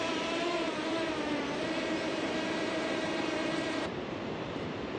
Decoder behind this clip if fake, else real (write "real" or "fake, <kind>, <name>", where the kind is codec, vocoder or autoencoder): fake, vocoder, BigVGAN v2